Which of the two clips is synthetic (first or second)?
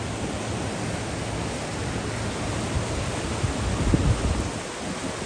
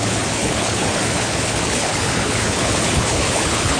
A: second